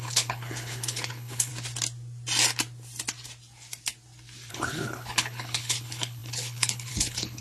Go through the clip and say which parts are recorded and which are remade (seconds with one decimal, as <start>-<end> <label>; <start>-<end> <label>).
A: 0.0-1.5 remade; 1.5-4.5 recorded; 4.5-7.4 remade